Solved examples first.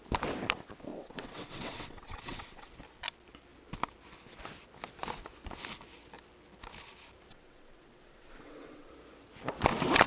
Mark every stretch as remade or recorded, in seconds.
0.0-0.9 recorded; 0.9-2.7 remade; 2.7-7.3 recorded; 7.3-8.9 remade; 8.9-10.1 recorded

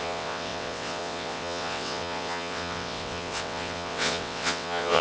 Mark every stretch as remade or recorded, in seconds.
0.0-5.0 remade